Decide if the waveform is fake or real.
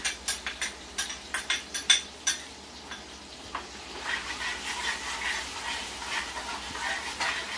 real